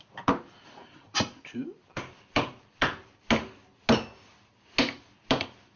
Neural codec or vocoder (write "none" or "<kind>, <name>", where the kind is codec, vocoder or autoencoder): none